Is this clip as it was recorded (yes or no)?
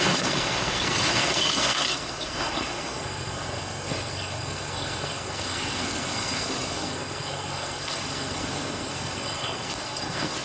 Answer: no